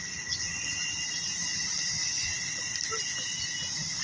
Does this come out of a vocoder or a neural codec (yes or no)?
no